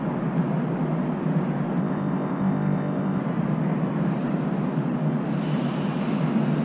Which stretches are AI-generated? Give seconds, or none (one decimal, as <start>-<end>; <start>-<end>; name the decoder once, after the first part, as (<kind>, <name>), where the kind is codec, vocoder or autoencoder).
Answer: 1.8-3.2 (codec, ZipCodec)